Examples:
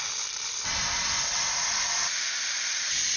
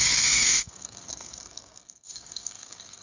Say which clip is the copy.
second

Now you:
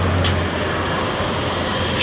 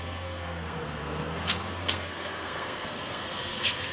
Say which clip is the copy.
second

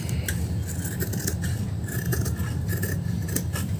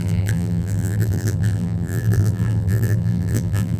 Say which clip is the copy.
second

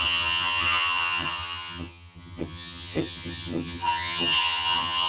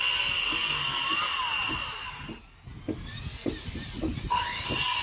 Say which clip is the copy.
first